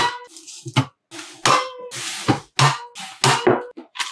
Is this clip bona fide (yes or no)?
yes